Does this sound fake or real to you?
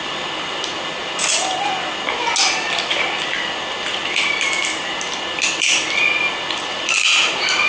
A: real